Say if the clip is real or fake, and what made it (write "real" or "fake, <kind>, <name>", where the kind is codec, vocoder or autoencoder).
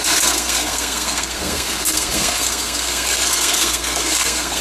fake, codec, SNAC